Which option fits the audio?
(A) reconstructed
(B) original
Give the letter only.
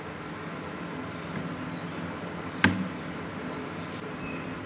B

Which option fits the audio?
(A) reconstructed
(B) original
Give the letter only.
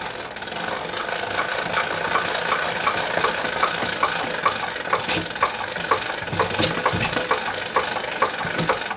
B